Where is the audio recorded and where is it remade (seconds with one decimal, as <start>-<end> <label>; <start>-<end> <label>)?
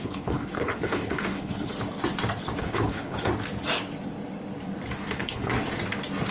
0.0-1.7 remade; 1.7-2.6 recorded; 2.6-3.3 remade; 3.3-5.1 recorded; 5.1-5.5 remade; 5.5-6.3 recorded